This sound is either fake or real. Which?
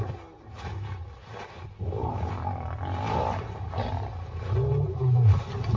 real